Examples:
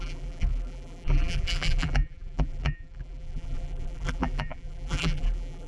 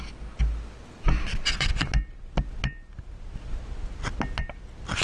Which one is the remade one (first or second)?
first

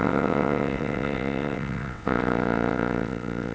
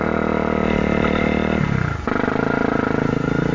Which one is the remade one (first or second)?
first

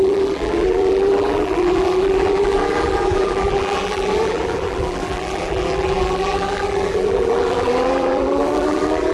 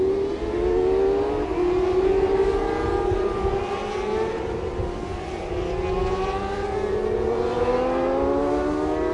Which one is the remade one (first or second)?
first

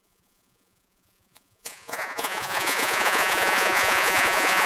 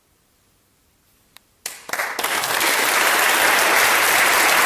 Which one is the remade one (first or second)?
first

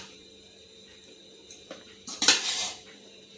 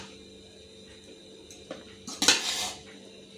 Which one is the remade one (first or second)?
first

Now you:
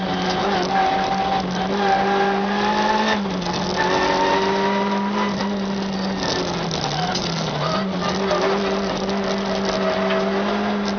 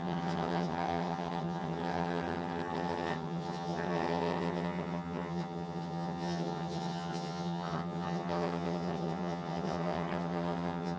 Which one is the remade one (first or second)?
second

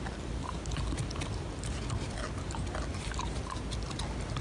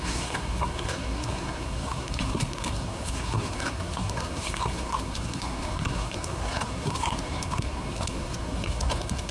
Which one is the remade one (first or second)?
second